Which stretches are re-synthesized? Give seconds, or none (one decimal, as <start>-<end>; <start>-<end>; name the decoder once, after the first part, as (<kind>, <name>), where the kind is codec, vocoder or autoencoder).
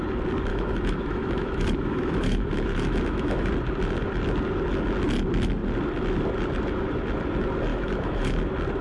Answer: 0.5-3.5 (autoencoder, DAC-VAE); 7.7-8.4